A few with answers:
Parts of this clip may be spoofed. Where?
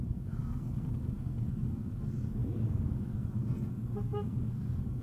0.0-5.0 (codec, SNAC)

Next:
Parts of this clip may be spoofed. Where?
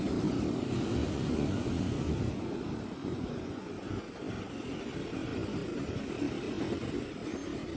1.0-2.6 (vocoder, Vocos); 3.0-3.9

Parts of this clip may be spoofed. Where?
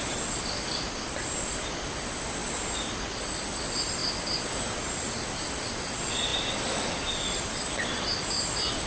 none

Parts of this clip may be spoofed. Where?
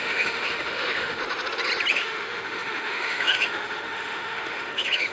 0.0-1.2 (autoencoder, DAC-VAE); 1.9-5.1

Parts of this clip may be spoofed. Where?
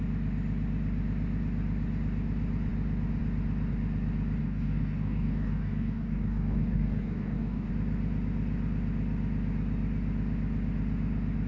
4.4-7.7 (codec, DAC)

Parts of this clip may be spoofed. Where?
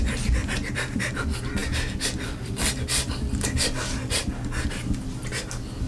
0.4-1.0 (vocoder, BigVGAN v2); 1.6-3.3